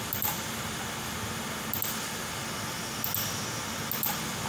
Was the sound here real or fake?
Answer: real